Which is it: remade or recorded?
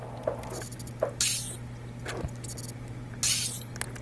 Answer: recorded